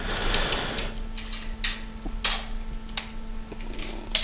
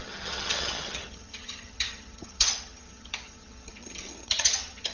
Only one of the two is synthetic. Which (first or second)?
second